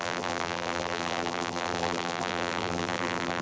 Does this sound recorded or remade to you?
remade